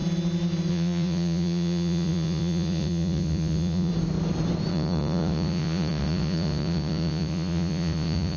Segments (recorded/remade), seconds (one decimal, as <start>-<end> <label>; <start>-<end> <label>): 0.0-0.7 recorded; 0.7-3.9 remade; 3.9-4.7 recorded; 4.7-8.4 remade